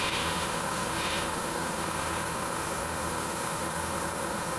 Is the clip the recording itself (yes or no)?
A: no